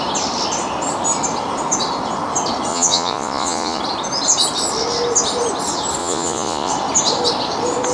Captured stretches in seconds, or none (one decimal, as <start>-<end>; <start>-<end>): 0.0-2.7; 3.8-6.0; 6.7-7.9